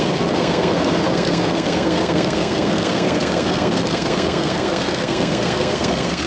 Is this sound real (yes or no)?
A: no